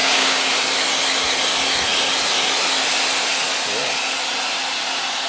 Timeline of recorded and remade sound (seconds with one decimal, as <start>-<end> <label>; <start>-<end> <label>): 0.0-0.5 remade; 0.5-5.3 recorded